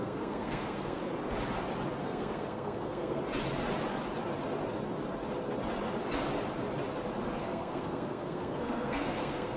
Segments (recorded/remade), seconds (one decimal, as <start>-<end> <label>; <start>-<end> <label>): 0.0-1.0 remade; 1.0-2.0 recorded; 2.0-3.2 remade; 3.2-7.4 recorded; 7.4-9.6 remade